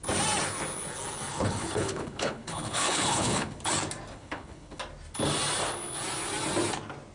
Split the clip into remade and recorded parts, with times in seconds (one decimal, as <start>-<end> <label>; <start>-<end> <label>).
0.0-1.3 recorded; 1.3-3.6 remade; 3.6-4.1 recorded; 4.1-4.8 remade; 4.8-7.1 recorded